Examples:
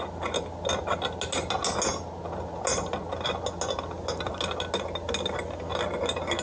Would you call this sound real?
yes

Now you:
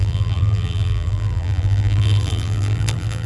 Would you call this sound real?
no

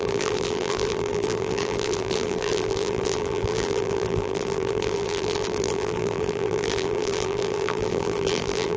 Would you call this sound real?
no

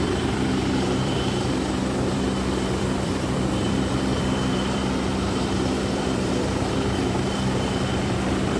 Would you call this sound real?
no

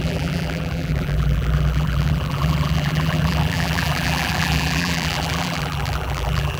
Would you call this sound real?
no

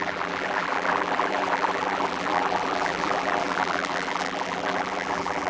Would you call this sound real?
no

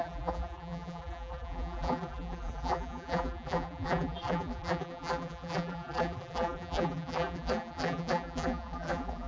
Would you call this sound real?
no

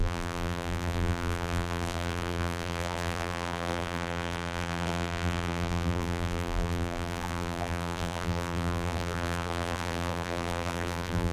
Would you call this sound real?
no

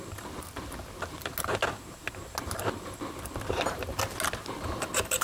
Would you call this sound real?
yes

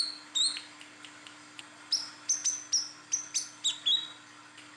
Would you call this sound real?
yes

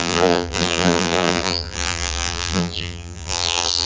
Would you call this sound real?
no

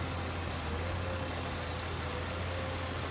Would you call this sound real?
yes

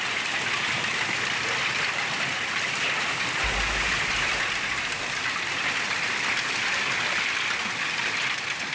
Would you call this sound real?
yes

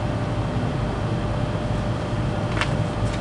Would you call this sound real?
yes